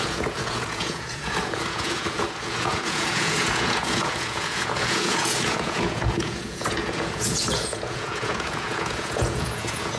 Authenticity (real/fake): fake